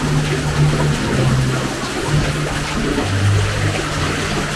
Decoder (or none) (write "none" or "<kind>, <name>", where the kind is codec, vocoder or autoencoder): none